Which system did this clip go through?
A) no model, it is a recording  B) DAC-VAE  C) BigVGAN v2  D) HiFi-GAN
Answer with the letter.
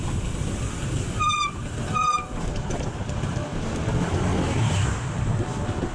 C